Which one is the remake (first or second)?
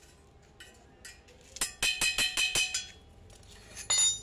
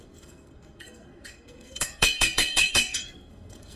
second